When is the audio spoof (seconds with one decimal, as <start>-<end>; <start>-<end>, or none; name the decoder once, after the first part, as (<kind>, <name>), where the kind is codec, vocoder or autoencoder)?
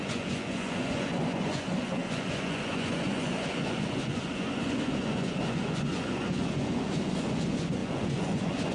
0.0-8.7 (vocoder, Vocos)